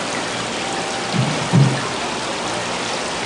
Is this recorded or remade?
recorded